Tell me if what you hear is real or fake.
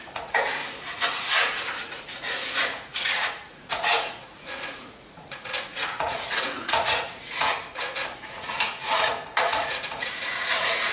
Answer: fake